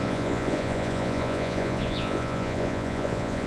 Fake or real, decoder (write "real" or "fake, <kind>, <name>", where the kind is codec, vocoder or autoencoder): fake, vocoder, Vocos